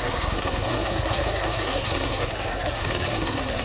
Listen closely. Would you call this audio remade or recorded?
remade